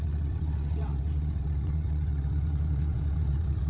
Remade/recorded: remade